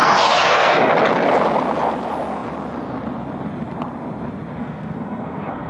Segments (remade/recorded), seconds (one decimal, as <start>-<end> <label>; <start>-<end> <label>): 0.0-0.9 remade; 0.9-4.6 recorded; 4.6-5.7 remade